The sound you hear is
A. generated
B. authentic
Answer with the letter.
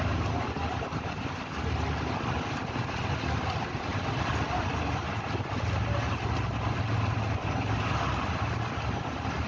B